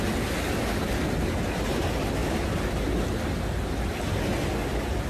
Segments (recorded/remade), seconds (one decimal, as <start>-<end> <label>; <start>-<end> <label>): 0.0-5.1 recorded